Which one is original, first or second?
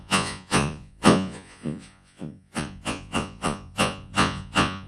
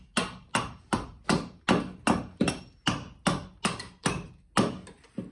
second